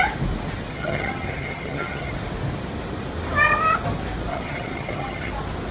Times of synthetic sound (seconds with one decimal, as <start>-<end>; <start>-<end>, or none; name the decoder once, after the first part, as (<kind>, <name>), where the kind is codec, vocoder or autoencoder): 0.7-2.1 (vocoder, HiFi-GAN); 4.3-5.3